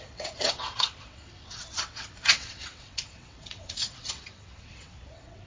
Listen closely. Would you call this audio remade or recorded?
remade